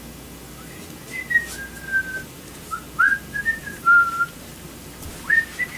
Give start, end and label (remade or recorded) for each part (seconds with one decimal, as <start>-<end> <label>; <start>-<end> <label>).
0.0-2.0 recorded; 2.0-5.8 remade